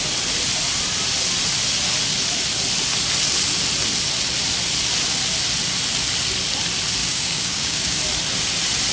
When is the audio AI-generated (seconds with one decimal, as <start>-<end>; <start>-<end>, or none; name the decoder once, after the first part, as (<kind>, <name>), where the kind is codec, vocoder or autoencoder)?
7.0-8.0 (codec, DAC)